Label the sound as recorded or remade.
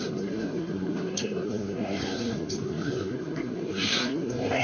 remade